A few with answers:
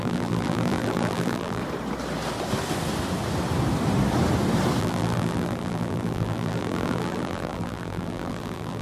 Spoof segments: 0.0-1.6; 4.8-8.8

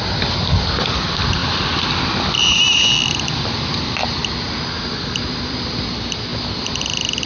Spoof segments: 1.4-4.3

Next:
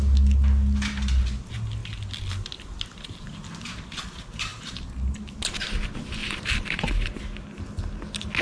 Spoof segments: 4.5-5.2; 6.2-7.2

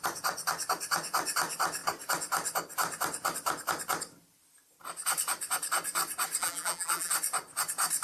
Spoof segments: 6.4-7.1

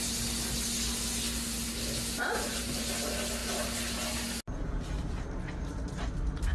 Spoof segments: 2.2-2.8